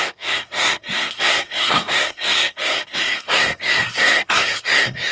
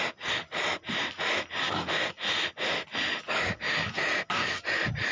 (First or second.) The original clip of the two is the second